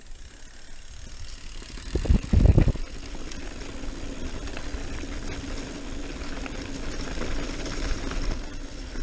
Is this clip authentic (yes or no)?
yes